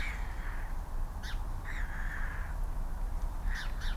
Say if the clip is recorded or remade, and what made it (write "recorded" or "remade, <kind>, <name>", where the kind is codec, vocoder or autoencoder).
recorded